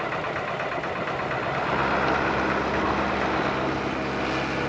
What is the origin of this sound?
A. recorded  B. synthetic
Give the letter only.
A